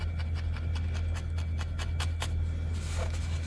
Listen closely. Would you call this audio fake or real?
real